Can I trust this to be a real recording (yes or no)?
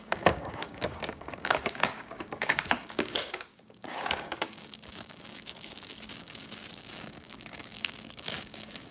no